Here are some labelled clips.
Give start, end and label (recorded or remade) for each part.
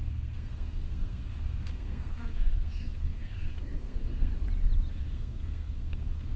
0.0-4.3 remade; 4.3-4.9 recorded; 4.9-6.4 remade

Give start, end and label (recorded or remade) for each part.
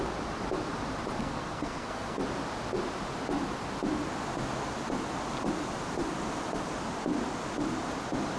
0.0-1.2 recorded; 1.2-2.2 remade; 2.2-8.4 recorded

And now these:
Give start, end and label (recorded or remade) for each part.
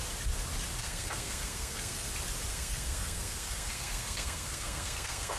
0.0-0.8 recorded; 0.8-2.1 remade; 2.1-2.5 recorded; 2.5-5.4 remade